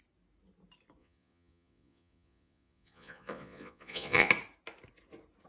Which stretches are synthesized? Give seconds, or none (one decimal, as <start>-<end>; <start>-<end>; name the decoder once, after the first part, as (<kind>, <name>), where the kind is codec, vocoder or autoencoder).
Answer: 1.0-4.3 (vocoder, Vocos)